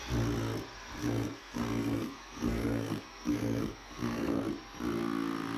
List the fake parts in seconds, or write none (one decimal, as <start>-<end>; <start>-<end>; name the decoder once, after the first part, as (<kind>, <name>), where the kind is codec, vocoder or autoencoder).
1.0-4.4 (codec, SNAC)